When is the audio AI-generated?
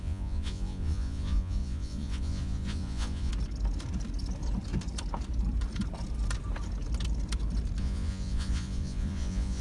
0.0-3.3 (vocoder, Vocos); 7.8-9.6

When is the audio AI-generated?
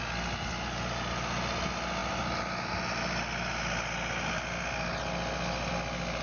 none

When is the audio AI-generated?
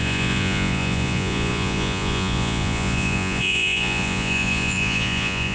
0.0-5.5 (vocoder, Vocos)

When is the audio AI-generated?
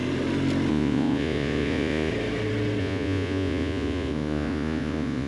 0.7-2.1 (vocoder, Vocos); 2.8-5.3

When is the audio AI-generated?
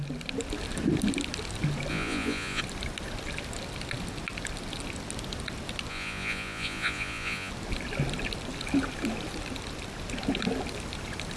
1.9-2.6 (vocoder, Vocos); 5.9-7.5